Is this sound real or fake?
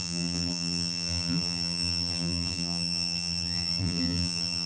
fake